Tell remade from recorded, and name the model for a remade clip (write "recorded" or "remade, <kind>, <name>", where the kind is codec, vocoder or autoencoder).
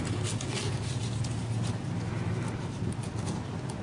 recorded